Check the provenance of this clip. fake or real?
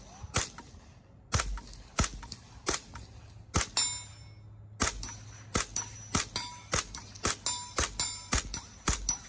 real